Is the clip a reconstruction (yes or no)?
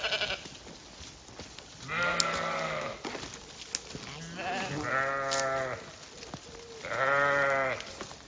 no